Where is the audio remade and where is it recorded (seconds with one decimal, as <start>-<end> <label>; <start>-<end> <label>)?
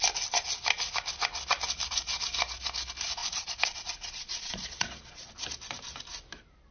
0.0-3.2 recorded; 3.2-5.3 remade; 5.3-6.7 recorded